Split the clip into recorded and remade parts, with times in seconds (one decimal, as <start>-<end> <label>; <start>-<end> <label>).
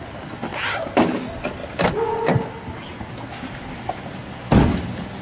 0.0-5.2 recorded